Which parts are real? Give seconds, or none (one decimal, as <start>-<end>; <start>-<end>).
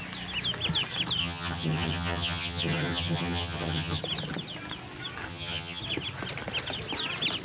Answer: 0.0-1.2; 4.0-5.3; 5.8-7.4